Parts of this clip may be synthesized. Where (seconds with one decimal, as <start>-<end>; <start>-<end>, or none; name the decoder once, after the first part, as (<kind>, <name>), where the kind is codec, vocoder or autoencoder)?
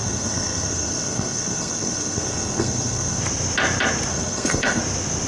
0.0-3.2 (codec, SNAC); 4.1-4.8